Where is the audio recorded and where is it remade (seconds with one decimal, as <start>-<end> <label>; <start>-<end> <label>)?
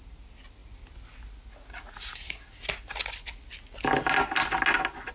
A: 0.0-5.1 recorded